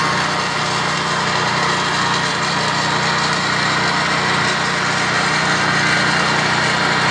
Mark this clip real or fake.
real